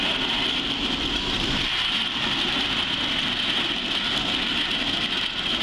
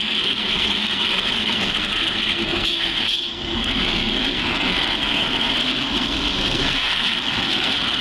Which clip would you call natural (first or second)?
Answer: first